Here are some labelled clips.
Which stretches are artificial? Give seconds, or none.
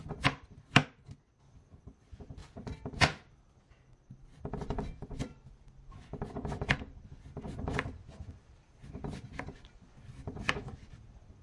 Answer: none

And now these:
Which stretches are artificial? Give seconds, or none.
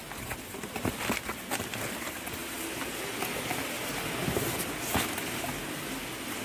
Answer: 2.4-3.0 (vocoder, BigVGAN v2); 4.2-5.9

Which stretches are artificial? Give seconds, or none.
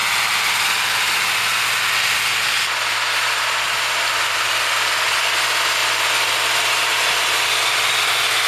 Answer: none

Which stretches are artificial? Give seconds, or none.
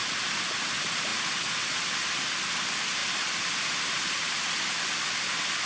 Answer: 3.0-4.4 (vocoder, BigVGAN v2)